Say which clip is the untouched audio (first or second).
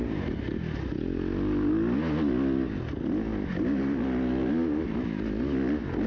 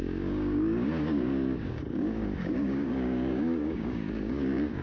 first